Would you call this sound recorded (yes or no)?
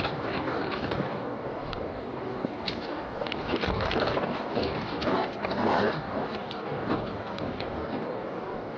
no